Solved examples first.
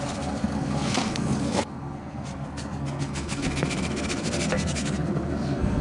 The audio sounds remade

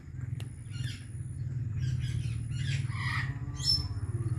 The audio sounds recorded